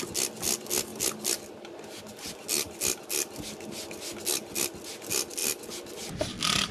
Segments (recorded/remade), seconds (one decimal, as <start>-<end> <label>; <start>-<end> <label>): 0.0-6.7 recorded